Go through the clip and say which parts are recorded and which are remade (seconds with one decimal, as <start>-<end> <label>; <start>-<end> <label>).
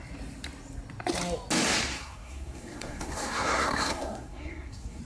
0.0-1.9 recorded; 1.9-5.0 remade